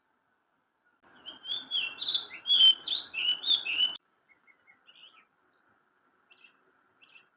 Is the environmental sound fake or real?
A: real